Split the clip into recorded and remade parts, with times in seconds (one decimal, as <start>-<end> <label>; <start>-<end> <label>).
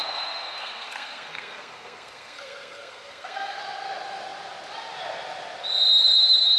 0.0-3.6 remade; 3.6-6.6 recorded